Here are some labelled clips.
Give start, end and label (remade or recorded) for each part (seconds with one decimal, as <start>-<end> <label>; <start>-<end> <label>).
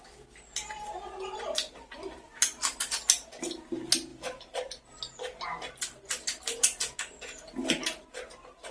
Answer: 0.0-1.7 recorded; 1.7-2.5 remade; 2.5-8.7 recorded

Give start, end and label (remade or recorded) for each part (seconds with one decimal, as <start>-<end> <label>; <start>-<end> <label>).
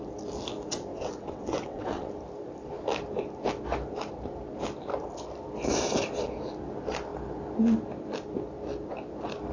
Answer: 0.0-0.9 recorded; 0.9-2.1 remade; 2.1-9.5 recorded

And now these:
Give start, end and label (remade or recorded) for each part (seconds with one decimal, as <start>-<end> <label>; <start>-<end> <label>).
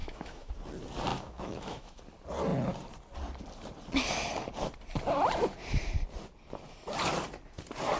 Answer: 0.0-0.5 remade; 0.5-1.1 recorded; 1.1-2.0 remade; 2.0-8.0 recorded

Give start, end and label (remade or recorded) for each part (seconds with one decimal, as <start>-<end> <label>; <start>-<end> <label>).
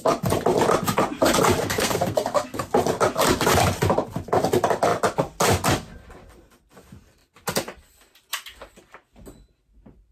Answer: 0.0-1.6 recorded; 1.6-2.7 remade; 2.7-10.1 recorded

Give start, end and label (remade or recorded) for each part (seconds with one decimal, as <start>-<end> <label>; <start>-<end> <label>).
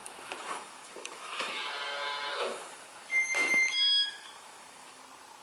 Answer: 0.0-1.6 remade; 1.6-2.3 recorded; 2.3-5.0 remade; 5.0-5.4 recorded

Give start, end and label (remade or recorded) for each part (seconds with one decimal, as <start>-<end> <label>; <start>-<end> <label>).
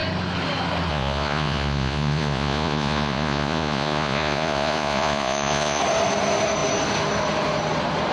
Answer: 0.0-0.9 recorded; 0.9-5.8 remade; 5.8-8.1 recorded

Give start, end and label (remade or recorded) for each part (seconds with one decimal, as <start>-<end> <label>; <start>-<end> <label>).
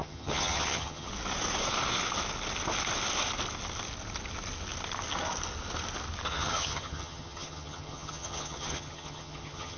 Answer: 0.0-1.1 remade; 1.1-6.3 recorded; 6.3-9.8 remade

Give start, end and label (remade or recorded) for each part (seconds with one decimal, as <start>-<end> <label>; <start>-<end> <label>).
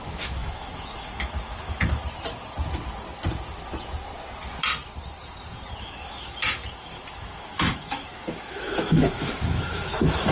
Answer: 0.0-2.0 remade; 2.0-5.8 recorded; 5.8-10.3 remade